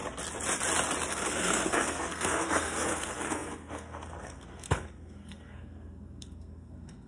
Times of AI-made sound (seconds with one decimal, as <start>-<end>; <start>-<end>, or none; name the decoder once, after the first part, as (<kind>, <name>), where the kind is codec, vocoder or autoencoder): 1.1-7.1 (codec, SNAC)